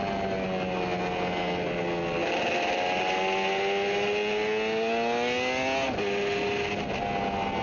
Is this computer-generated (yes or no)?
no